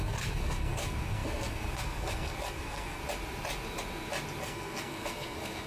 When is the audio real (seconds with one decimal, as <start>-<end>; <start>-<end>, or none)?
3.0-4.4